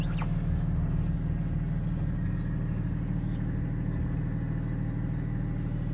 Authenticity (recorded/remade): recorded